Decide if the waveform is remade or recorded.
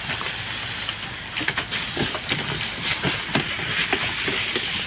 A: recorded